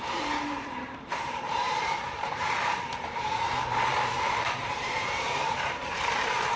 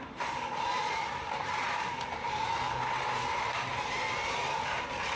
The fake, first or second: first